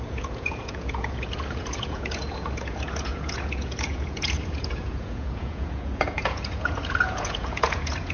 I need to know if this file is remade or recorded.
remade